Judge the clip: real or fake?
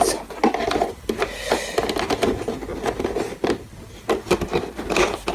real